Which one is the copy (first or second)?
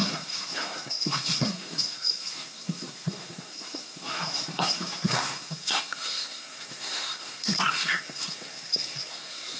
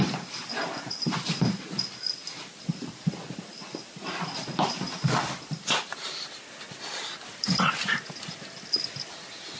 first